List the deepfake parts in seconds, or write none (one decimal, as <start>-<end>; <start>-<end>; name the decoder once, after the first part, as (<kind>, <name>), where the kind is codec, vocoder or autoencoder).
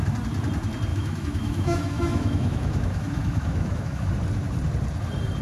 0.9-4.1 (autoencoder, DAC-VAE)